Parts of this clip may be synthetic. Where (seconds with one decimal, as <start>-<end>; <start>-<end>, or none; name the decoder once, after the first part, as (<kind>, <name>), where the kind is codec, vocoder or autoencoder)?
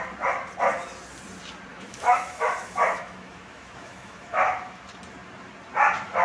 1.7-4.8 (autoencoder, DAC-VAE)